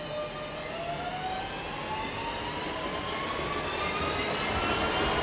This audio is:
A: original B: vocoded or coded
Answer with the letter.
A